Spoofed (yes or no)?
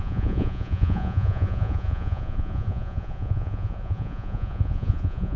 yes